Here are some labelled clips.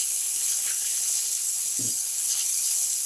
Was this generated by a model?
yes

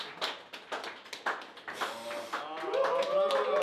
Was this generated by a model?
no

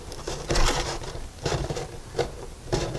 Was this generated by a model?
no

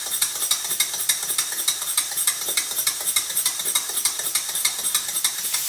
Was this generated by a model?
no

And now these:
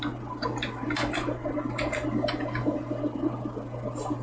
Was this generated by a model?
no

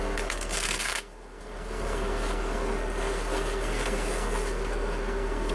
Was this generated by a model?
yes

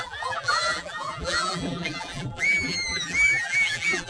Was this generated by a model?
yes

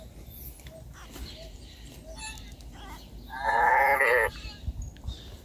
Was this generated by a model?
no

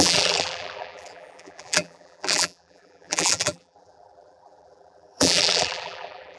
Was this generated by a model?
yes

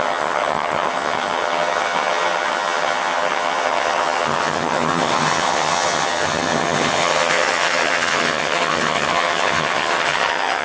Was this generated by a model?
yes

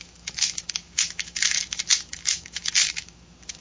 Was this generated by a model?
yes